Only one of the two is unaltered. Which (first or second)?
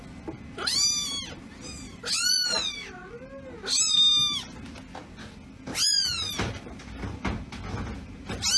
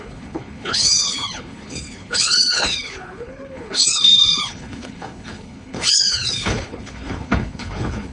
first